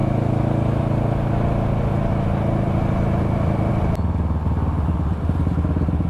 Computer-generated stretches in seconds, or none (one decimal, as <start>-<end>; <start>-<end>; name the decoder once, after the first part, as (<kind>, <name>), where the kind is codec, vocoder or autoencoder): none